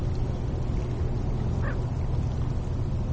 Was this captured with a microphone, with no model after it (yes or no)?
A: yes